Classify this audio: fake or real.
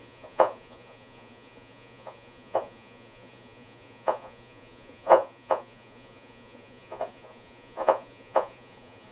fake